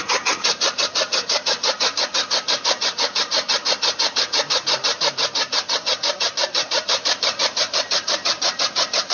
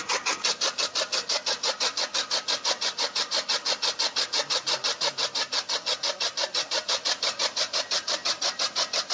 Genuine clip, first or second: second